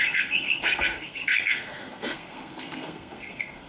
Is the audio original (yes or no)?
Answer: no